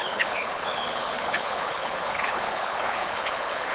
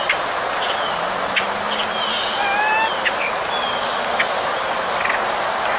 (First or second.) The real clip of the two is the second